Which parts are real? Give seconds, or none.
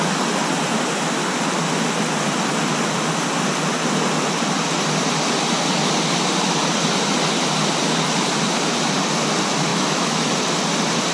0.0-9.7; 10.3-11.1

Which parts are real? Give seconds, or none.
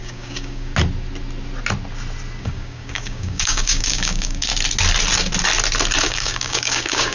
0.7-2.4; 4.5-6.0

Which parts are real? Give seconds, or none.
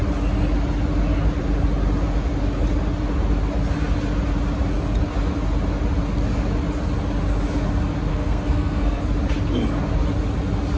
0.0-8.1; 9.0-10.8